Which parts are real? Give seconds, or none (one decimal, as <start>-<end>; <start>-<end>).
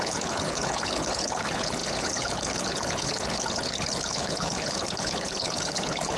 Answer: none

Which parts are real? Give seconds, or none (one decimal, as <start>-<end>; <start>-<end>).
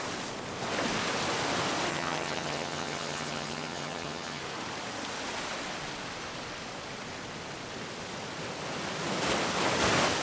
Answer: 0.0-1.9; 4.4-10.2